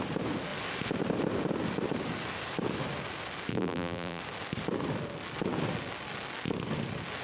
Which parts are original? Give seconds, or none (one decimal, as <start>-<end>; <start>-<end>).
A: 0.0-3.5; 4.2-7.2